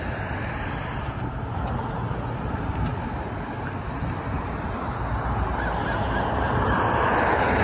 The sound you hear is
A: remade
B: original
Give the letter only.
B